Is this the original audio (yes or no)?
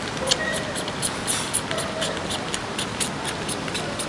yes